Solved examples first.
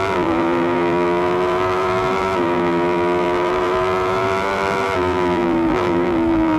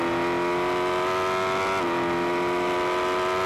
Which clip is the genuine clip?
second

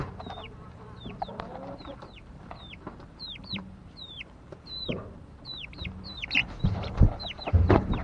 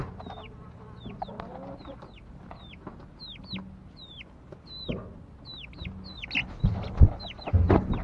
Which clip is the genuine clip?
second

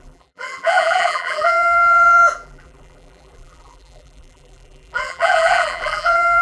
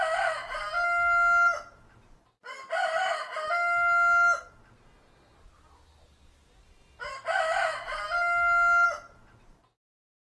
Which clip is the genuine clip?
second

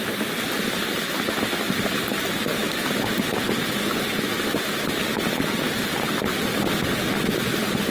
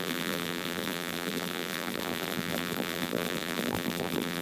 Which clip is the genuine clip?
first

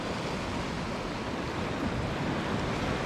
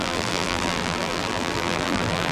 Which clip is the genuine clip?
first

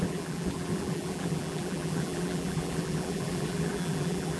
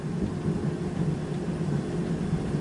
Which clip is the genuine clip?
second